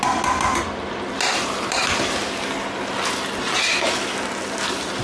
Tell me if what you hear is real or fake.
real